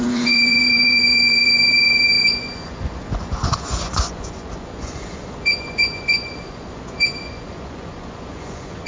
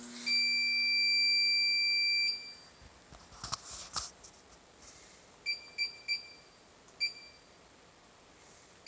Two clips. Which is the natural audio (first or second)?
second